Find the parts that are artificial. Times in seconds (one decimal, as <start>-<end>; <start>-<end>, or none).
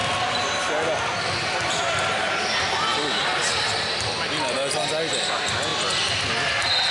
none